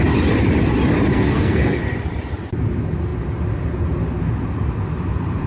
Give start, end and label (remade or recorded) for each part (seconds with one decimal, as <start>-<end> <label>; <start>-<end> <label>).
0.0-1.1 recorded; 1.1-1.8 remade; 1.8-5.5 recorded